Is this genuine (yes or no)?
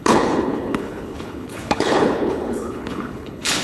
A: no